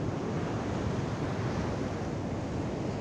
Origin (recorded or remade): recorded